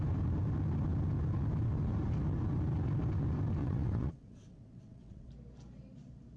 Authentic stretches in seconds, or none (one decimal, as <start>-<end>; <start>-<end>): 0.0-3.6; 5.3-6.4